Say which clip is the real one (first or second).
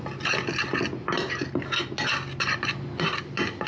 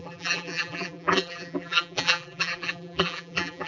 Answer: first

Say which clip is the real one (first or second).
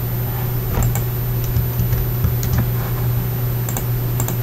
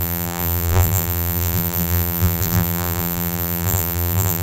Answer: first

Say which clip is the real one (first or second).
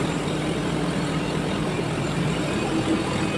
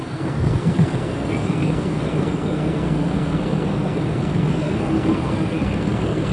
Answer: first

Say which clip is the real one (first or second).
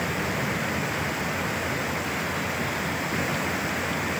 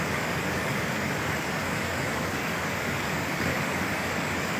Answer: first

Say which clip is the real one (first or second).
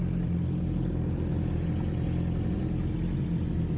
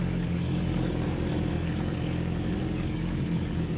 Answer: first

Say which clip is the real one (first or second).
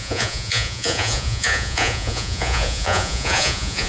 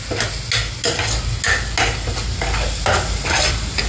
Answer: second